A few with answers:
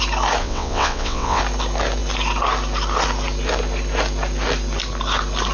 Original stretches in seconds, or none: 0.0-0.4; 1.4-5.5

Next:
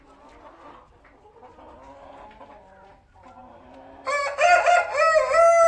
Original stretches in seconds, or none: 0.0-5.7

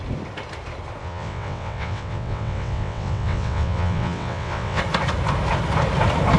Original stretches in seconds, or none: 0.0-1.0; 4.8-6.4

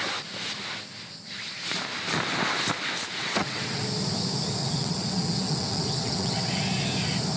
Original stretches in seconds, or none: 0.0-3.2; 3.8-4.6; 6.5-7.4

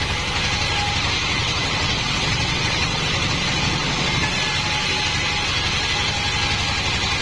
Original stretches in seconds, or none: 0.0-1.3; 3.1-7.2

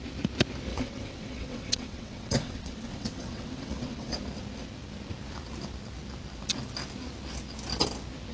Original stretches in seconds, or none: 0.0-0.7; 4.2-8.3